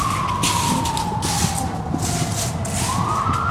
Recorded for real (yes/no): yes